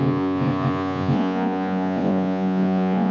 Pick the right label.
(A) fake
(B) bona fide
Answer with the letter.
A